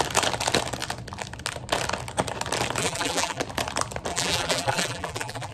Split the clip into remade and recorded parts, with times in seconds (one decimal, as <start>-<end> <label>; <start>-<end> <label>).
0.0-2.8 recorded; 2.8-3.4 remade; 3.4-4.1 recorded; 4.1-5.5 remade